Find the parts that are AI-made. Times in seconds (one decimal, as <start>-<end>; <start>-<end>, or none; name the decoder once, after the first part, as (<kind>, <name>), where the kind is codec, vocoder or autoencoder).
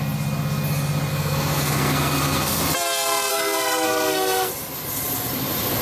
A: 1.1-2.6 (codec, SNAC); 3.3-4.5